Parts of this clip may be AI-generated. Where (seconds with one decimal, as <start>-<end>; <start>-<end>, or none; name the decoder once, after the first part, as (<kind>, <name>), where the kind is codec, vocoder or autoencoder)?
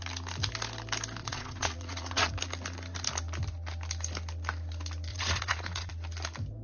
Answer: 1.2-2.3 (vocoder, Vocos); 5.1-5.9